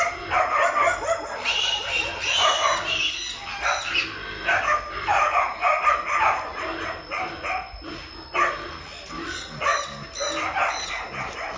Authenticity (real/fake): real